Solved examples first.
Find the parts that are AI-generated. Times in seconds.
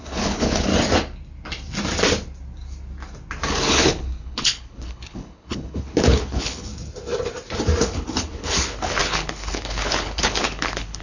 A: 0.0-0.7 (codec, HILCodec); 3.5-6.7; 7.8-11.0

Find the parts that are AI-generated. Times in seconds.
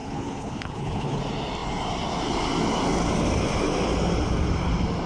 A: 0.0-1.2 (codec, HILCodec)